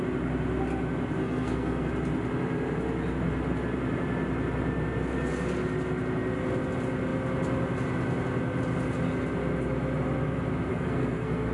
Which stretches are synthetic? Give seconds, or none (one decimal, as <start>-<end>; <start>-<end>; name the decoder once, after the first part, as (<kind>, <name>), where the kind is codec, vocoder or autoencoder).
1.2-1.9 (codec, SNAC); 10.7-11.5

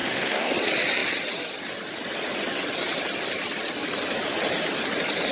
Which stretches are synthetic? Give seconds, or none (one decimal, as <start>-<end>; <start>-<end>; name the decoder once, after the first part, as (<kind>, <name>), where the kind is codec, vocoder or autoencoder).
0.0-0.5 (codec, SNAC)

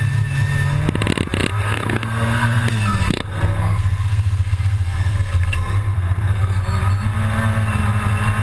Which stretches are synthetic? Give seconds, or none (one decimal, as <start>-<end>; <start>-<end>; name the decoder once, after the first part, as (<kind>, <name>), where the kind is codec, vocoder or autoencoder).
1.6-6.6 (codec, SNAC)

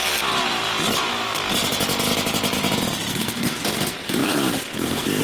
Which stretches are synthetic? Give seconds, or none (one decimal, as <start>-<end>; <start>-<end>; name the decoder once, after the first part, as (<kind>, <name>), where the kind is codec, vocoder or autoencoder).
3.1-5.2 (codec, SNAC)

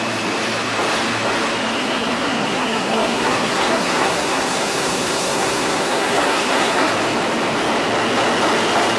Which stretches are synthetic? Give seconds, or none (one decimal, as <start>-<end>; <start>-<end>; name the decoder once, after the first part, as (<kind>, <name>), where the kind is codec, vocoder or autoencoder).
1.8-6.9 (codec, SNAC)

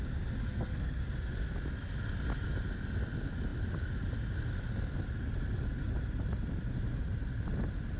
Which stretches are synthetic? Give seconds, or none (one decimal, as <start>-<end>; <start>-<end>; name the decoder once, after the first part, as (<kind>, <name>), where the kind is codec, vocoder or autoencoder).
0.4-1.0 (codec, SNAC)